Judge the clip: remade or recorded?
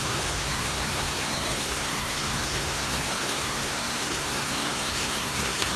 remade